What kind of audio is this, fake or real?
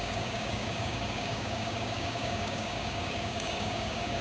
fake